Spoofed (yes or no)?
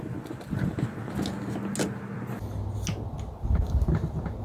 no